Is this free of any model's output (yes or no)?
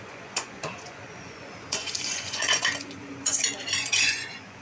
no